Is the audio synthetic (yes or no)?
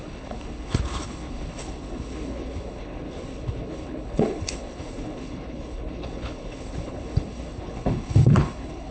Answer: yes